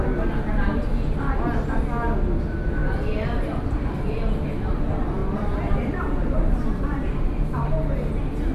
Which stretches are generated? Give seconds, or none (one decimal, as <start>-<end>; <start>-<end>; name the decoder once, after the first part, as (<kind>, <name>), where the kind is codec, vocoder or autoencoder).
2.8-4.1 (vocoder, BigVGAN v2); 5.2-8.1